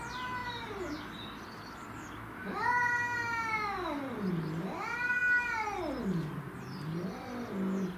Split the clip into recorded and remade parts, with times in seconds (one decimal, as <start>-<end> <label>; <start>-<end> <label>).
0.0-0.4 recorded; 0.4-1.0 remade; 1.0-8.0 recorded